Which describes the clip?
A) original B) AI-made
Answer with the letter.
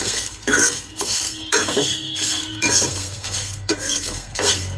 B